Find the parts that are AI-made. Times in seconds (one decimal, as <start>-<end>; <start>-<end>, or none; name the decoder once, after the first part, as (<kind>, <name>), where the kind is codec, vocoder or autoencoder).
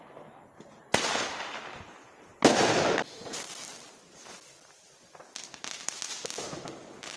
none